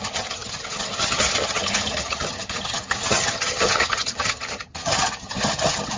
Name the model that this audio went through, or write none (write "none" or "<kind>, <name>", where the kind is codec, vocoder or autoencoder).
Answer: vocoder, HiFi-GAN